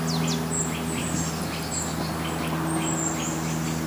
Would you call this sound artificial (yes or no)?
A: no